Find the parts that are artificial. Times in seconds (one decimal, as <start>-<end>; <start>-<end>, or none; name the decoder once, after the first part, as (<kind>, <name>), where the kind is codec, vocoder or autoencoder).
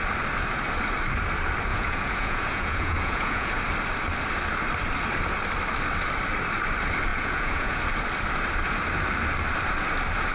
1.7-3.6 (vocoder, Vocos); 7.1-7.8